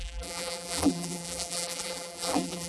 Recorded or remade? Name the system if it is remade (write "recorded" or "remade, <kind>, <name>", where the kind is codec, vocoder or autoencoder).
remade, vocoder, BigVGAN v2